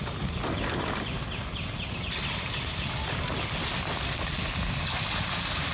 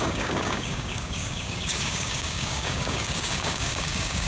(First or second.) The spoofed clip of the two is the second